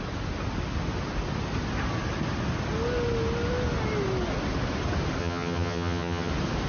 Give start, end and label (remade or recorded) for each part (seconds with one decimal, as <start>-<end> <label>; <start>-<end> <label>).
0.0-5.2 recorded; 5.2-6.3 remade; 6.3-6.7 recorded